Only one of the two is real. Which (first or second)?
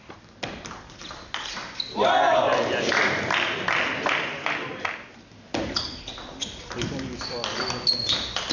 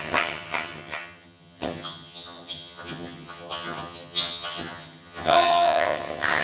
first